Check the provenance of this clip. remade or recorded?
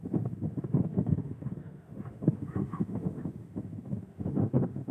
remade